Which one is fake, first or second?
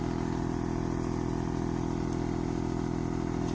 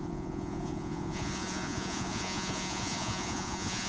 second